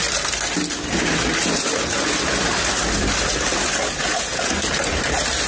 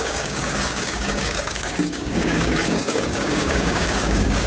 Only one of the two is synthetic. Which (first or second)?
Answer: second